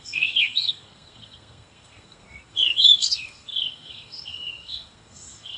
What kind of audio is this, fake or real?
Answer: fake